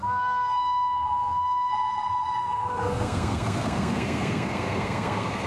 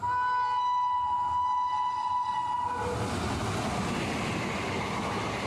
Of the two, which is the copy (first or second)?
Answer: first